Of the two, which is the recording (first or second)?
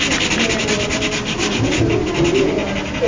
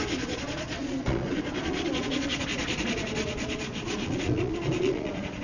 first